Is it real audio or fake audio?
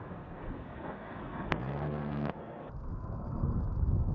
fake